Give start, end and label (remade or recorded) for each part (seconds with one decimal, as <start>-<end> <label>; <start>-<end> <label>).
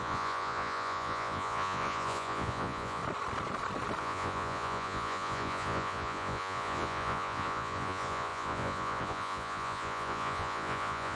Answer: 0.0-3.0 remade; 3.0-4.0 recorded; 4.0-11.2 remade